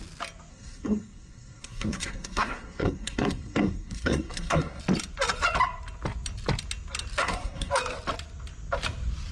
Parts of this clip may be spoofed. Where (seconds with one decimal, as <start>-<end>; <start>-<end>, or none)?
0.5-4.8; 7.2-7.7